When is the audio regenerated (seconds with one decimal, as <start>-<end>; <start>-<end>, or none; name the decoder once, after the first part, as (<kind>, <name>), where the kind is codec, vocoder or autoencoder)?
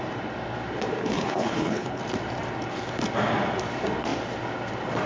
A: 1.0-2.0 (codec, HILCodec)